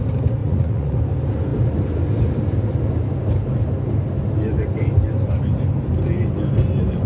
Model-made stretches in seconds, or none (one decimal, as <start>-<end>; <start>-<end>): 0.4-1.0